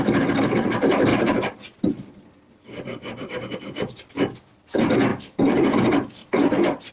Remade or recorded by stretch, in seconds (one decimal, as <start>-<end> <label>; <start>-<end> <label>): 0.0-6.9 recorded